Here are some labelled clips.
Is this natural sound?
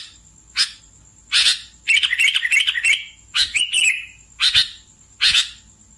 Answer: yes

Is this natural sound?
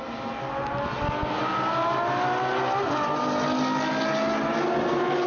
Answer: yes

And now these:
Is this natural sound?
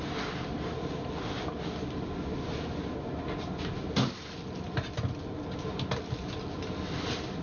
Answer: yes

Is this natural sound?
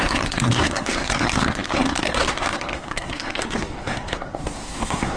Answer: no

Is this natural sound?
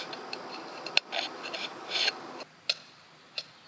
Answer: yes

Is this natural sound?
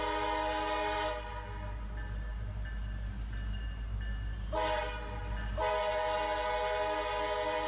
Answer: yes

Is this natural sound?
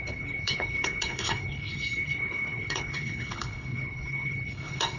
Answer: no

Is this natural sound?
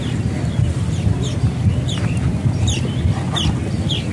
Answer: yes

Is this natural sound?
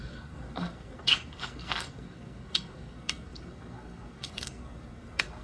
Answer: no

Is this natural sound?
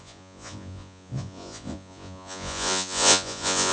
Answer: no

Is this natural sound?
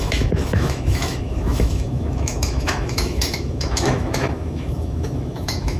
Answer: no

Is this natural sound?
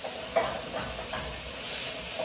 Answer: yes